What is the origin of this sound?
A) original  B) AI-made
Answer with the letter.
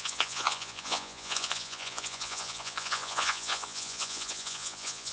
B